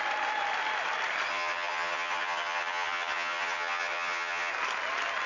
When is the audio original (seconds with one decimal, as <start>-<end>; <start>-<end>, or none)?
0.0-1.3; 4.5-5.3